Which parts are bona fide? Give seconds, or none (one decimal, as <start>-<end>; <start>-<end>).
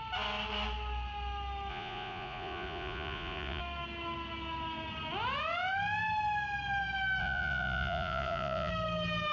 0.0-1.7; 3.6-7.2; 8.7-9.3